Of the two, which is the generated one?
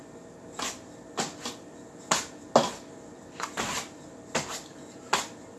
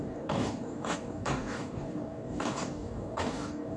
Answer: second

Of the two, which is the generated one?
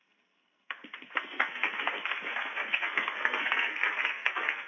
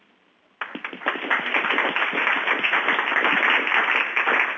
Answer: first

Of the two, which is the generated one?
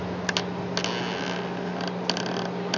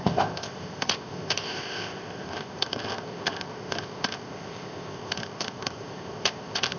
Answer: second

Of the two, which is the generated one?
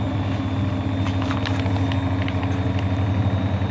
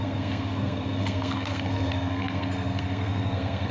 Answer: second